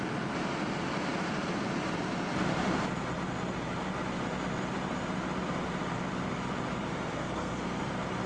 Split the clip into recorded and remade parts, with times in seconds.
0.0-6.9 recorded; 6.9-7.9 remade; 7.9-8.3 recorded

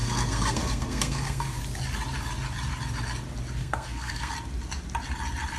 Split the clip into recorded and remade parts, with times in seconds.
0.0-1.6 remade; 1.6-3.6 recorded; 3.6-4.3 remade; 4.3-5.6 recorded

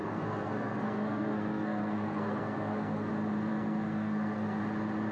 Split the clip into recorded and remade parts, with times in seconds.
0.0-3.1 remade; 3.1-3.5 recorded; 3.5-4.6 remade; 4.6-5.1 recorded

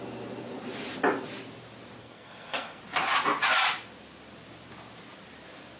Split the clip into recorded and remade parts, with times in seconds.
0.0-2.0 recorded; 2.0-2.8 remade; 2.8-5.8 recorded